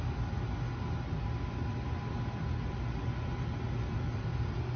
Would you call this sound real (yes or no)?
yes